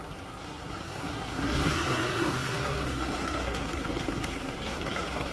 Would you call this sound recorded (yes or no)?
no